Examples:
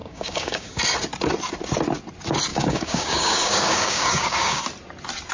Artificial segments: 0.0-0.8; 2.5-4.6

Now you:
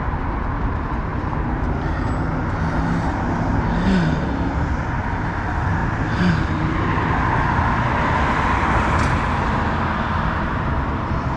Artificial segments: none

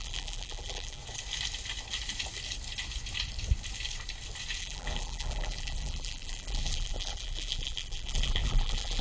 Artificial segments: 0.0-1.0; 4.6-9.0

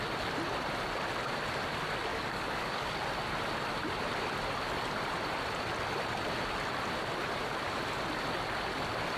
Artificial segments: 2.1-2.9

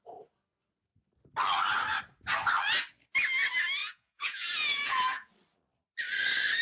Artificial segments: 3.8-5.3